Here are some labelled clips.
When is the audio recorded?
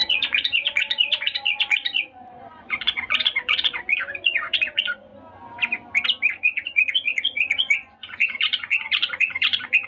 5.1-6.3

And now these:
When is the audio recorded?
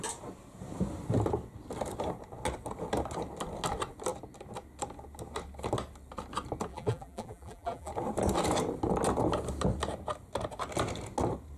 0.0-6.7; 7.9-11.6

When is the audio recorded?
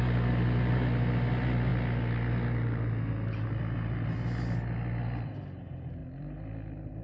0.0-7.0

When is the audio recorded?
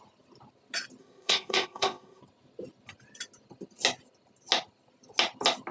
0.0-1.0; 2.2-5.7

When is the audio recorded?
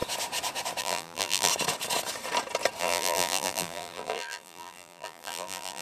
0.0-0.8; 1.5-2.8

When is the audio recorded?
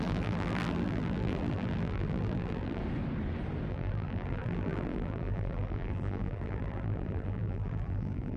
2.8-3.7